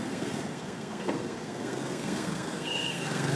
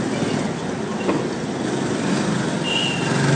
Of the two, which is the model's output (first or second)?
first